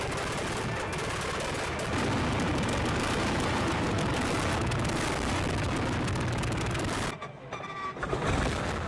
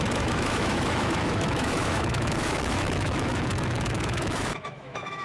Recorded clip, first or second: first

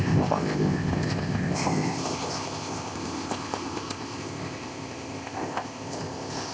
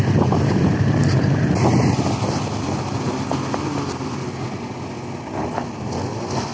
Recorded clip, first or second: second